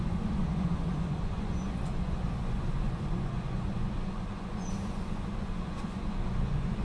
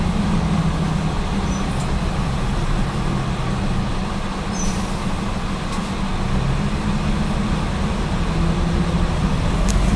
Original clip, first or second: second